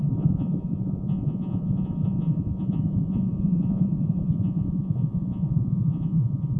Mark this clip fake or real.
fake